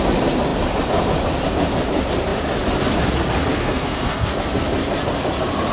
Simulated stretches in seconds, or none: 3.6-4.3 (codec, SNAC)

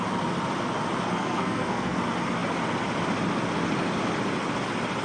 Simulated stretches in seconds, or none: 1.1-2.0 (codec, SNAC)

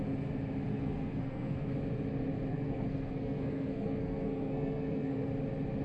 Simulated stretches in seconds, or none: 0.7-1.7 (codec, SNAC); 2.5-5.3

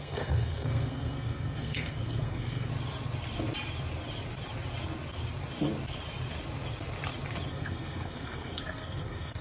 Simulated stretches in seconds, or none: 0.0-2.7 (codec, SNAC); 7.5-9.4

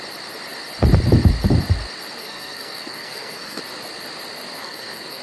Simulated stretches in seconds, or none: 2.2-3.6 (codec, SNAC); 4.6-5.2

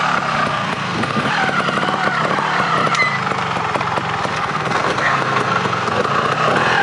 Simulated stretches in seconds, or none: 0.5-1.3 (codec, SNAC); 4.3-6.0

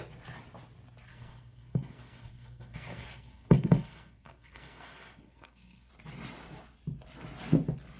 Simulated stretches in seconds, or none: 1.1-5.9 (codec, SNAC)